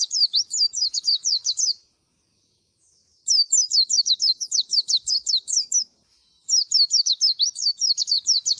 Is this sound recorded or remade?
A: remade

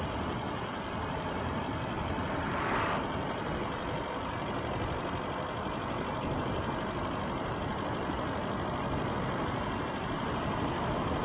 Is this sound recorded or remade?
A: recorded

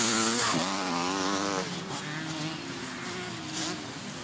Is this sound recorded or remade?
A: recorded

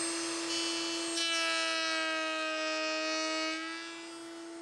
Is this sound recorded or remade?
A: recorded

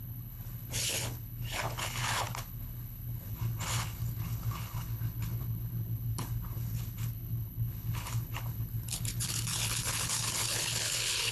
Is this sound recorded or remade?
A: remade